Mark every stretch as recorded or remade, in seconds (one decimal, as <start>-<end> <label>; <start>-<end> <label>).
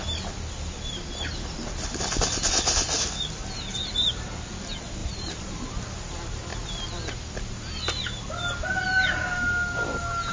0.0-5.0 recorded; 5.0-5.5 remade; 5.5-10.3 recorded